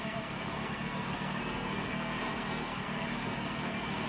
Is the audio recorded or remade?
remade